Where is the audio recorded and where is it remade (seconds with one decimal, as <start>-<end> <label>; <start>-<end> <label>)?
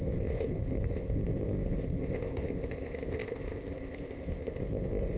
0.0-5.2 remade